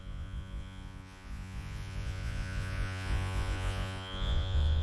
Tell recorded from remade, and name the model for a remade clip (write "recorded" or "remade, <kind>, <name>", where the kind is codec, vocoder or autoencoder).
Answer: remade, vocoder, Vocos